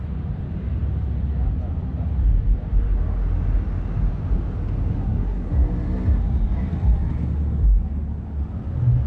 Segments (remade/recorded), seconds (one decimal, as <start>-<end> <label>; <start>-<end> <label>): 0.0-4.9 recorded; 4.9-5.5 remade; 5.5-9.1 recorded